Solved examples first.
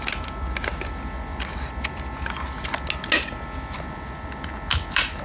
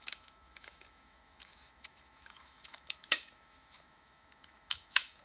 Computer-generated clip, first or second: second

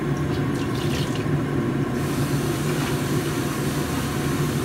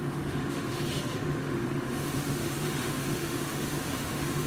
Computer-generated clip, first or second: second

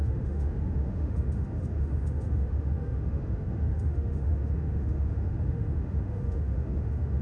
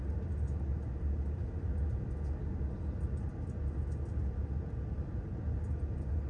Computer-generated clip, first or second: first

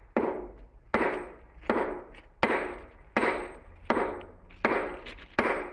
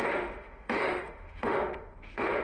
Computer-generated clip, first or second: second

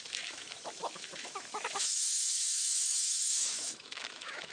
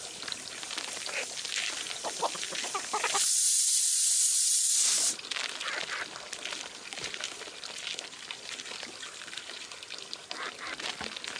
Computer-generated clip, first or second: first